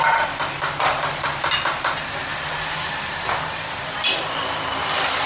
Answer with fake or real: real